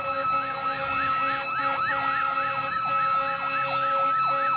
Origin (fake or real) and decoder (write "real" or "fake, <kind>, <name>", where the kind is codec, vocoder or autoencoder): real